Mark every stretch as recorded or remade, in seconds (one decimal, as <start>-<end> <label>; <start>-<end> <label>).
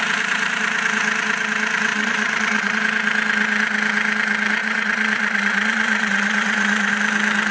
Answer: 0.0-1.9 recorded; 1.9-2.8 remade; 2.8-4.6 recorded; 4.6-6.9 remade; 6.9-7.5 recorded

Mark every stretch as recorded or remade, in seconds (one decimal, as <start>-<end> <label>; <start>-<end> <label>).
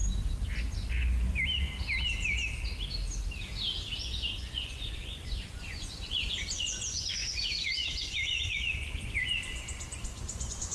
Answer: 0.0-3.9 recorded; 3.9-10.7 remade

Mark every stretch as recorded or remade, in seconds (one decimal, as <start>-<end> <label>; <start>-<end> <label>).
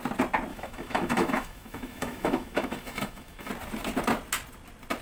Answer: 0.0-0.5 recorded; 0.5-3.5 remade; 3.5-5.0 recorded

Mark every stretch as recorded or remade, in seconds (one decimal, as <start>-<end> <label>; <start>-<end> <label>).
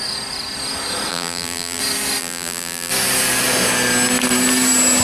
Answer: 0.0-1.1 recorded; 1.1-1.8 remade; 1.8-2.2 recorded; 2.2-2.9 remade; 2.9-5.0 recorded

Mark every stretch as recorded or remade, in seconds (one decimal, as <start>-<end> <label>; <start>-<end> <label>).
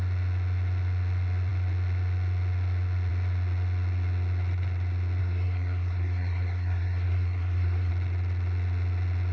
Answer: 0.0-5.2 recorded; 5.2-7.9 remade; 7.9-9.3 recorded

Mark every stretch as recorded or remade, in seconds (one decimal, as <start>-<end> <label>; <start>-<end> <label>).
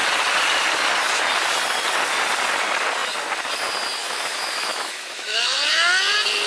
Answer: 0.0-4.0 recorded; 4.0-5.9 remade; 5.9-6.5 recorded